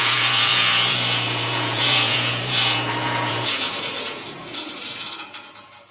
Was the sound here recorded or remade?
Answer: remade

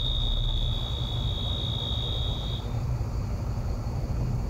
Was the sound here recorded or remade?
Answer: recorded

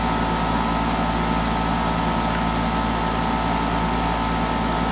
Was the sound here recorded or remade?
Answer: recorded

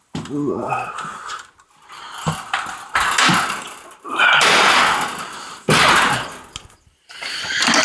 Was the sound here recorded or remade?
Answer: recorded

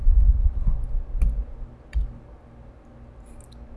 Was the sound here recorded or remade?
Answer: recorded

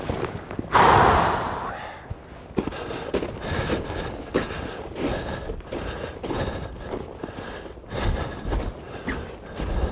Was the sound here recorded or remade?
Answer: recorded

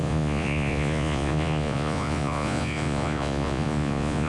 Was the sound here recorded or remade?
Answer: remade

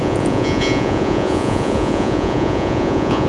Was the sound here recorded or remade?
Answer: remade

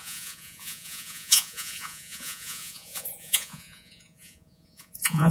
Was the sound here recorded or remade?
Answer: remade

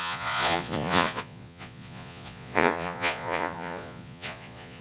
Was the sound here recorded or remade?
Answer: remade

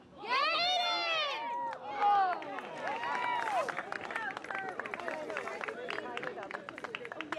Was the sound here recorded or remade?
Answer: recorded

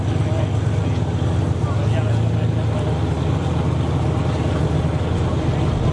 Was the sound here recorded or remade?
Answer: recorded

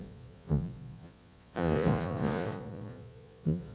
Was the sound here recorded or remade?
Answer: remade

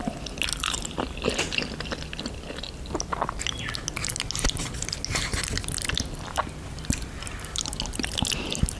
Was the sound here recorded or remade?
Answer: recorded